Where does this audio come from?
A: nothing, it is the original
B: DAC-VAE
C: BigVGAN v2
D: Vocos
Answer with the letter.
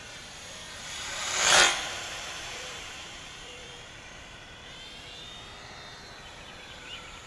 C